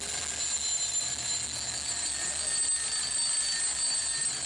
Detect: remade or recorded recorded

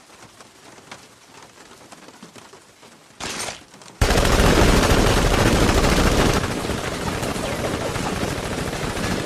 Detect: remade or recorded remade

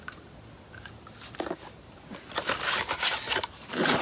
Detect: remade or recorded recorded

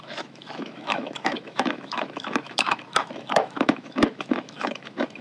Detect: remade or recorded remade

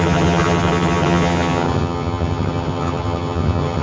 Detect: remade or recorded remade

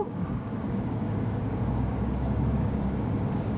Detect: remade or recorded remade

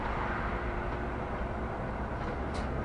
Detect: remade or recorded recorded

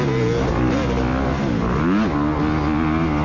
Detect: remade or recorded recorded